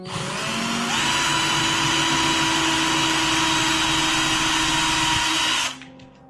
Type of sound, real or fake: real